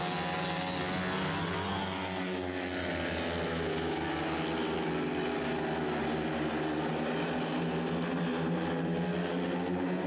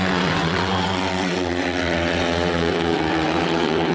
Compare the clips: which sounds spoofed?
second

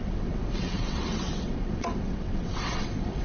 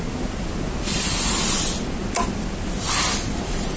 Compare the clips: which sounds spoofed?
first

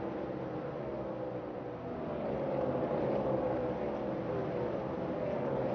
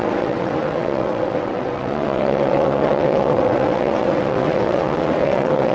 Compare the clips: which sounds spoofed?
second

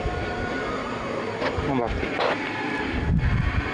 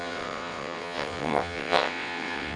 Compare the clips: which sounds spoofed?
second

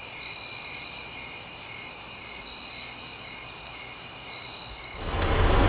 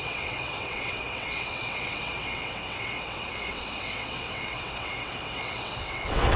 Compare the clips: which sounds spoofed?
second